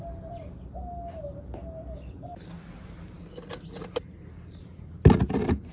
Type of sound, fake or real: real